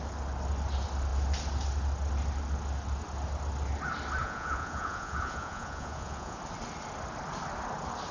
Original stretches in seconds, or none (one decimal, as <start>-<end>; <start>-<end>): 0.0-4.2; 6.4-8.1